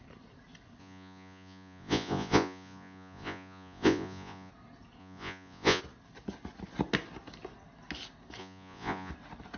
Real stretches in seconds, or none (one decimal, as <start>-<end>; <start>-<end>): 0.0-0.8; 4.5-5.0; 5.8-8.4; 9.1-9.6